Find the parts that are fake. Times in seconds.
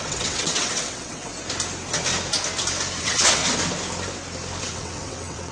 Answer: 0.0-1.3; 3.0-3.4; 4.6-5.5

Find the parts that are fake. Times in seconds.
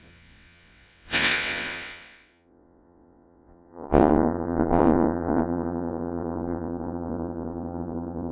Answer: 0.0-8.3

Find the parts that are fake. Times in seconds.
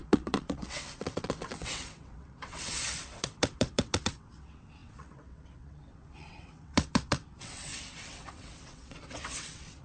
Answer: 0.0-9.8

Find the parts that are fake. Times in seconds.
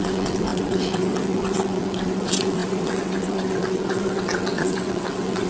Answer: 0.0-5.5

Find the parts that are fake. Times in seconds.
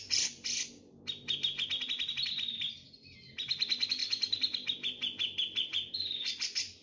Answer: none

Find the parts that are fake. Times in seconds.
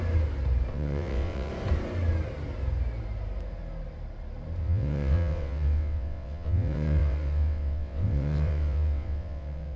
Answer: 0.7-1.5; 4.6-9.8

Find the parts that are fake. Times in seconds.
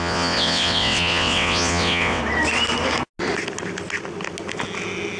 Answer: 0.0-2.2